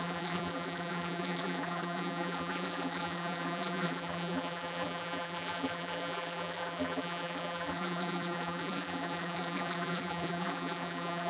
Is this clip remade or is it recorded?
remade